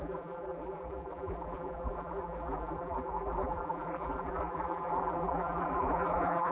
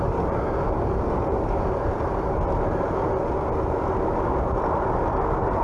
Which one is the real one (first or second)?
second